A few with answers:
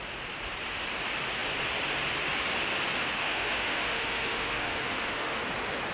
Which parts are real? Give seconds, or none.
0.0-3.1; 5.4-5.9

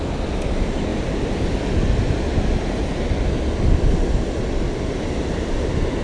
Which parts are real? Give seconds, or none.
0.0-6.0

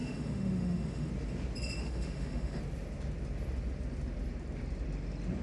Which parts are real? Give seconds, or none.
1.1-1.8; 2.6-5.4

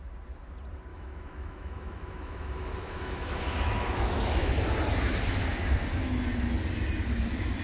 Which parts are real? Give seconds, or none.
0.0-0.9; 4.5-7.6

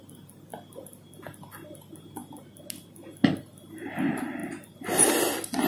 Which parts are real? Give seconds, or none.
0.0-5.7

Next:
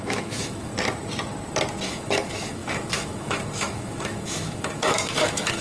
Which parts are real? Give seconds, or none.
0.7-1.9

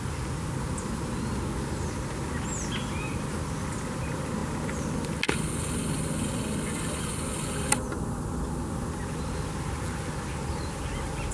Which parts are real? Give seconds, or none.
0.0-11.3

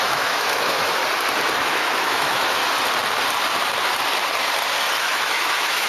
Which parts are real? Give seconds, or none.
1.0-1.5; 2.6-5.0